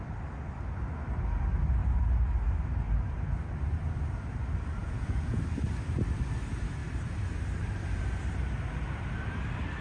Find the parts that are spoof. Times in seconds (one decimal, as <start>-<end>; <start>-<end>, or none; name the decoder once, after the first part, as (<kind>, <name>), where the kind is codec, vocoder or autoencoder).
4.8-5.4 (vocoder, Vocos)